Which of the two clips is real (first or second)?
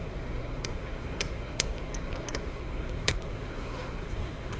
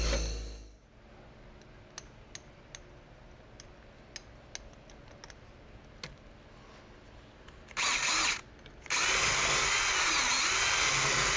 second